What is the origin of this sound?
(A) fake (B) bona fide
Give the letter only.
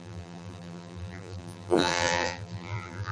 A